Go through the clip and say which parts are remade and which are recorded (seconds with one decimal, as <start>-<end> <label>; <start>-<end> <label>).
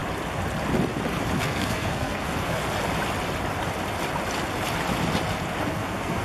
0.0-1.4 recorded; 1.4-2.6 remade; 2.6-5.6 recorded; 5.6-6.2 remade